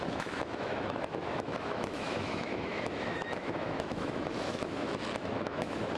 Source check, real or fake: fake